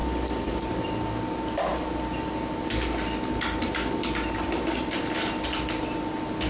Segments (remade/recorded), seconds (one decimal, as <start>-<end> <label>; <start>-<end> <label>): 0.0-0.8 remade; 0.8-6.5 recorded